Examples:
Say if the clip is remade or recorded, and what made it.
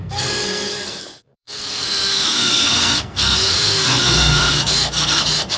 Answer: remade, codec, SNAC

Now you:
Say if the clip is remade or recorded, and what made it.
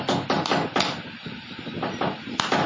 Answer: recorded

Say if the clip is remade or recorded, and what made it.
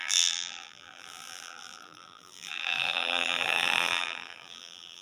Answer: remade, vocoder, BigVGAN v2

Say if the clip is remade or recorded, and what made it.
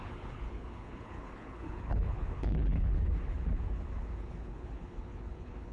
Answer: remade, codec, HILCodec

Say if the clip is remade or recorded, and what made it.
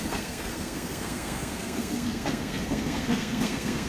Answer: remade, codec, SNAC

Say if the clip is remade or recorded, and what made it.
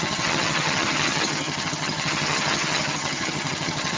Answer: remade, vocoder, HiFi-GAN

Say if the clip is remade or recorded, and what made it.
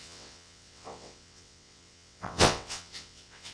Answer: remade, vocoder, WaveNeXt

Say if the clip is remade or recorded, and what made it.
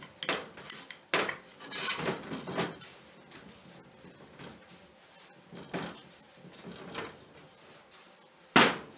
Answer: recorded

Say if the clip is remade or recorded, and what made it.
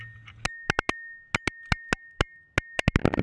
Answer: recorded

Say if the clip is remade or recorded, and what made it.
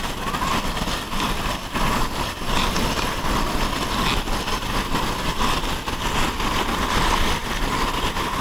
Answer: recorded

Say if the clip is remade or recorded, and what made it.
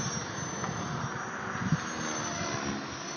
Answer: recorded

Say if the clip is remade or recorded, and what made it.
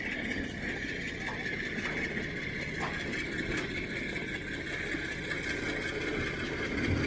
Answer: recorded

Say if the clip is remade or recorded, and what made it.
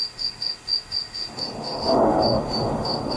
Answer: remade, autoencoder, DAC-VAE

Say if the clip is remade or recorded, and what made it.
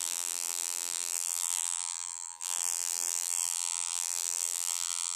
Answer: remade, vocoder, BigVGAN v2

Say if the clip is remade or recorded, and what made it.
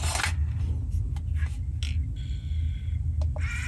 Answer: recorded